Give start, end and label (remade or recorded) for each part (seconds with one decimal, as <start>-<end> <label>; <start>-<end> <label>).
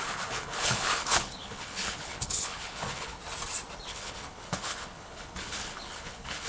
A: 0.0-3.2 remade; 3.2-3.9 recorded; 3.9-6.5 remade